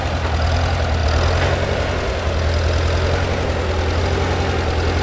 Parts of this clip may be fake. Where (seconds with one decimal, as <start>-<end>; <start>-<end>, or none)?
none